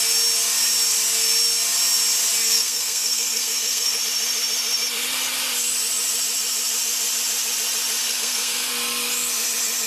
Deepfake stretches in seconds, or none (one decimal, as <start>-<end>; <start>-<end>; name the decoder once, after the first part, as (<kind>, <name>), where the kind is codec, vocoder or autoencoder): 2.4-4.0 (codec, SNAC); 8.0-8.7